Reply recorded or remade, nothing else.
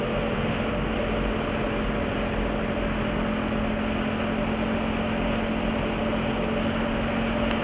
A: recorded